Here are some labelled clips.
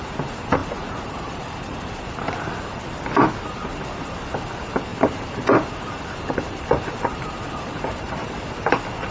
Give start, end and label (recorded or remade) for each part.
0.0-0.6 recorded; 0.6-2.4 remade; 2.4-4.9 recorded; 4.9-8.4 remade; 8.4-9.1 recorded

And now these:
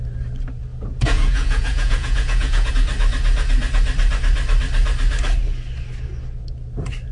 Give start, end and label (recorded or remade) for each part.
0.0-0.7 recorded; 0.7-2.7 remade; 2.7-7.1 recorded

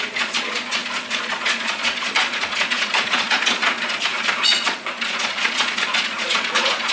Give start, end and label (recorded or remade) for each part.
0.0-6.9 remade

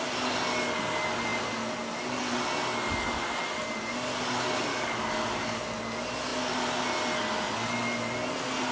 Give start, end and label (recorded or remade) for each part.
0.0-4.7 recorded; 4.7-5.6 remade; 5.6-8.7 recorded

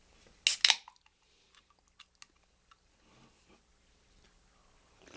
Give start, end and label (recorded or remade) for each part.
0.0-5.2 recorded